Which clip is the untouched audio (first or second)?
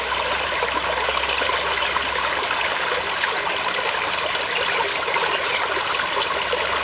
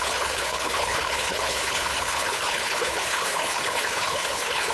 first